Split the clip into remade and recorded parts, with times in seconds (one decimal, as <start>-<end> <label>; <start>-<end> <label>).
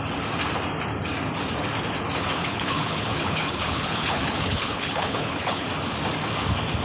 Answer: 0.0-2.4 recorded; 2.4-5.7 remade; 5.7-6.8 recorded